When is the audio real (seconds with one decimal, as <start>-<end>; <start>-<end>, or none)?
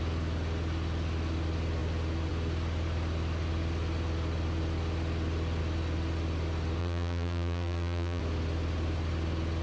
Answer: 0.0-6.8; 8.2-9.6